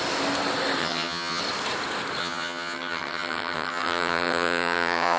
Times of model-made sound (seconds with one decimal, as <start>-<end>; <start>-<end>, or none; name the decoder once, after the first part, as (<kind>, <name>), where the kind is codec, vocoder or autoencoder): 0.8-1.4 (vocoder, HiFi-GAN); 2.2-5.2